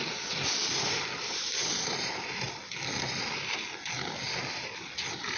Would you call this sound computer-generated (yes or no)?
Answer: no